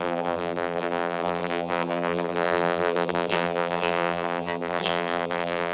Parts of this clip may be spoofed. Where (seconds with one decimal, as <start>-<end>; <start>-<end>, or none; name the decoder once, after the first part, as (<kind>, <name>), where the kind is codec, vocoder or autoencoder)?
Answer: 0.0-5.7 (vocoder, BigVGAN v2)